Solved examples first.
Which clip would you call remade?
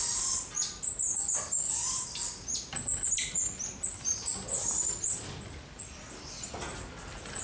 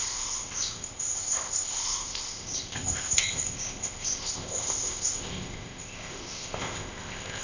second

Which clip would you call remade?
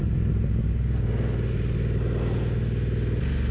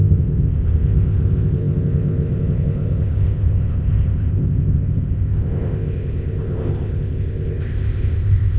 second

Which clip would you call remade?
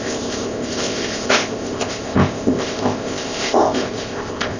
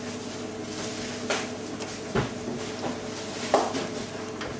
first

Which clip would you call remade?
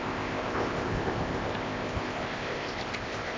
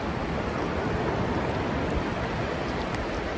first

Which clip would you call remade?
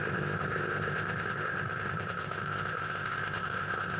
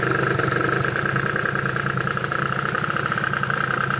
first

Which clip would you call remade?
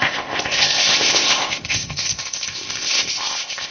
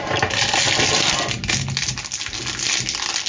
first